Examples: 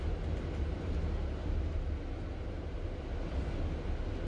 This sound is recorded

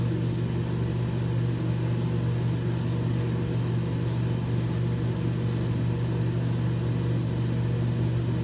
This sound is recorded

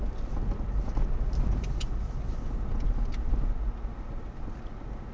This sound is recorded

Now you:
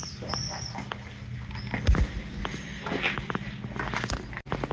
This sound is recorded